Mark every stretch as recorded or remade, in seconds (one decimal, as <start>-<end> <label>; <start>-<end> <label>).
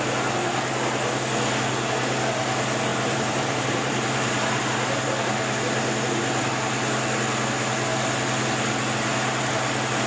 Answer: 0.0-2.9 recorded; 2.9-4.6 remade; 4.6-10.1 recorded